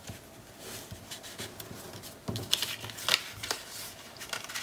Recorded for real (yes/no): yes